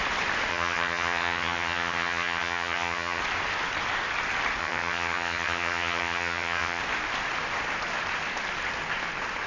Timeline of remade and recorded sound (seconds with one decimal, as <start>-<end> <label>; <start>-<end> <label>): 0.0-0.5 recorded; 0.5-3.2 remade; 3.2-4.6 recorded; 4.6-6.8 remade; 6.8-9.5 recorded